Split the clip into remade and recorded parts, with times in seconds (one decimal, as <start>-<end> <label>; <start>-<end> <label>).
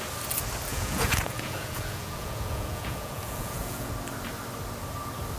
0.0-0.7 recorded; 0.7-3.9 remade; 3.9-5.4 recorded